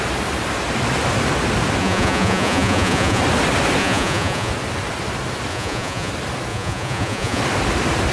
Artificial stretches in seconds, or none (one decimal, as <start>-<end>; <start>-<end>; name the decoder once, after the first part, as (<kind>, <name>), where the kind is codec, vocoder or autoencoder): 1.8-3.2 (vocoder, Vocos); 3.8-4.5; 5.5-6.1; 6.5-7.4